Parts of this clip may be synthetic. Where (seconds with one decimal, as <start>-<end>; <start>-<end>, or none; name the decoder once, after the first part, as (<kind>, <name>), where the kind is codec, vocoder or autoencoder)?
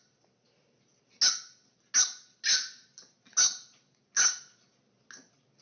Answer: none